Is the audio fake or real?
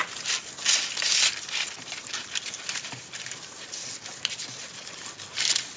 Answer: real